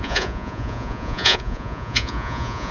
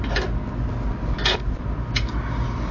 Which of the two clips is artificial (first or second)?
first